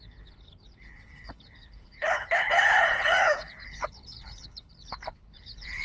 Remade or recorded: remade